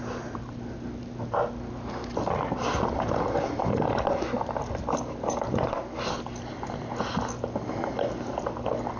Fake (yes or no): no